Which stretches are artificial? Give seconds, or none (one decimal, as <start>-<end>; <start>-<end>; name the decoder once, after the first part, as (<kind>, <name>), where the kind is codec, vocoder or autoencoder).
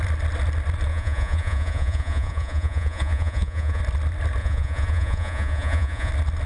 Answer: 0.9-3.8 (vocoder, Vocos); 4.4-6.1